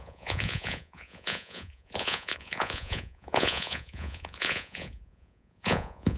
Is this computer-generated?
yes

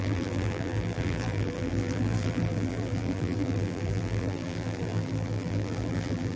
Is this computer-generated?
yes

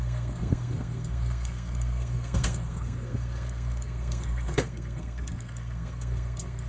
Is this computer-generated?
yes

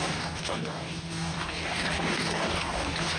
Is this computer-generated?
yes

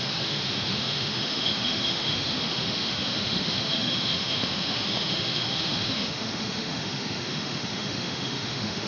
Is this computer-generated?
yes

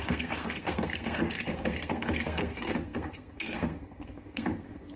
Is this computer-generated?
yes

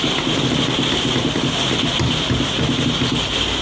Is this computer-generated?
no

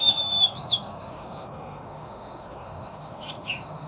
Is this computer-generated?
yes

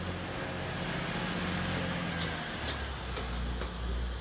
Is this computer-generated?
no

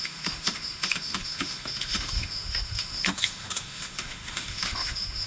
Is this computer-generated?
yes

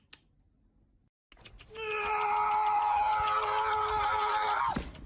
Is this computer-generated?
no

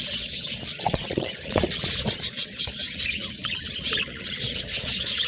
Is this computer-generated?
yes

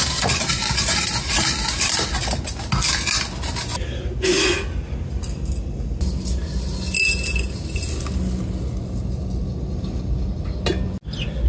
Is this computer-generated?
no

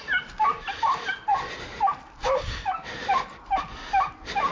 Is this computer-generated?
no